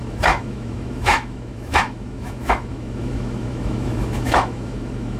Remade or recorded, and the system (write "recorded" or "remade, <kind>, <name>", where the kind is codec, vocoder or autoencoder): remade, autoencoder, DAC-VAE